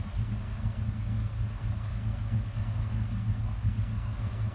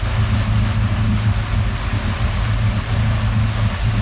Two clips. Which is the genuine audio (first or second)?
second